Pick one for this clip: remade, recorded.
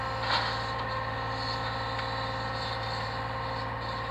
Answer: recorded